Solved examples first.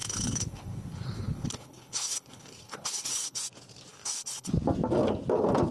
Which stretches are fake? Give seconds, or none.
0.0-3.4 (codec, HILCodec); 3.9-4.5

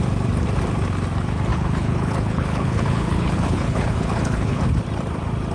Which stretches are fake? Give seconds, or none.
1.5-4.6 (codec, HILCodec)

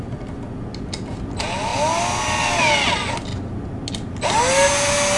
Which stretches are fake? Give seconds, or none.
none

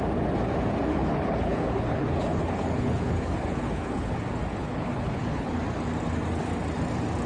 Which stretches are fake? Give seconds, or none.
0.9-4.1 (codec, HILCodec); 4.6-5.5

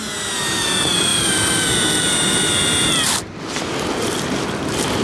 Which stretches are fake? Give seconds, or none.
none